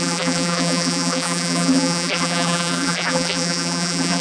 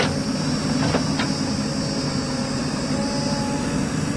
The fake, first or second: first